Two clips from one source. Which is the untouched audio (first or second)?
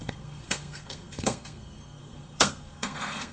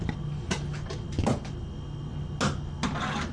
second